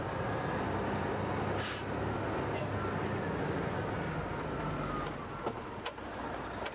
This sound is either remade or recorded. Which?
recorded